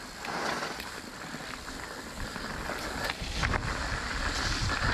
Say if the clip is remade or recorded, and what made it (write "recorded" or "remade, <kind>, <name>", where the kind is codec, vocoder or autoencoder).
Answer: recorded